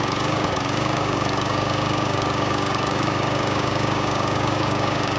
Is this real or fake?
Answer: fake